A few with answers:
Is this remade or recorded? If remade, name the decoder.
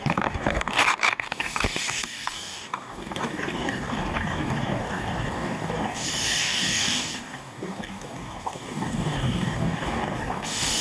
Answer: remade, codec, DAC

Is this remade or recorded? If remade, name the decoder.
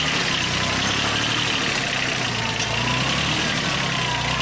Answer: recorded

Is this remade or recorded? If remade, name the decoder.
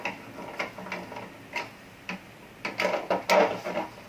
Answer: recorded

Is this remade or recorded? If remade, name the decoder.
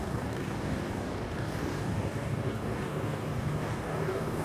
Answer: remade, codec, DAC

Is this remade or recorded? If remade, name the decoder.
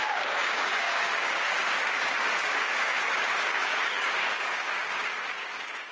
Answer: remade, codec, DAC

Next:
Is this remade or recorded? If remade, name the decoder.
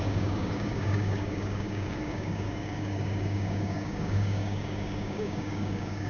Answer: remade, codec, DAC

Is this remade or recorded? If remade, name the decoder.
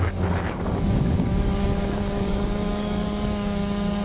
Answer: remade, codec, DAC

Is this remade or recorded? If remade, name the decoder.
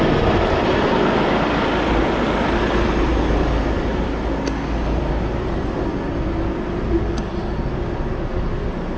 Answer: recorded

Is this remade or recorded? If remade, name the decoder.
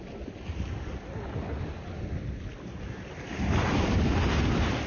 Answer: recorded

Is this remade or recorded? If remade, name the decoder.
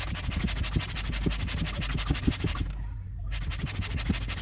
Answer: recorded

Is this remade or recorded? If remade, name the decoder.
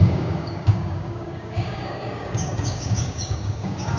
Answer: remade, codec, DAC